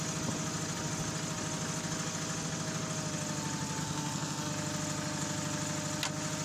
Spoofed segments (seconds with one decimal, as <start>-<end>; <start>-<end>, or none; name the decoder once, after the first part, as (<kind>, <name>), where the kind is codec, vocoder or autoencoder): 3.8-4.5 (codec, SNAC)